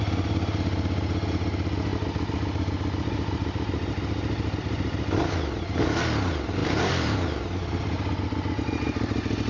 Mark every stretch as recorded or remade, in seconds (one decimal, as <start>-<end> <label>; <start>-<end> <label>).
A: 0.0-9.5 recorded